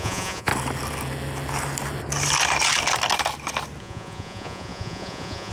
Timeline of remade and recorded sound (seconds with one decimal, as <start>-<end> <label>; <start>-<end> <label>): 0.0-0.5 remade; 0.5-3.8 recorded; 3.8-5.5 remade